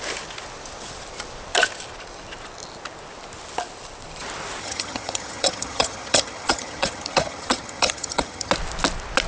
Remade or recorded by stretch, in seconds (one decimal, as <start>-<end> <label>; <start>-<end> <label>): 0.0-4.6 recorded; 4.6-8.5 remade; 8.5-9.3 recorded